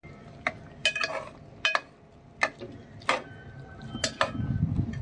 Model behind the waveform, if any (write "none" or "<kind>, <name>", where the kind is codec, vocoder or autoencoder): none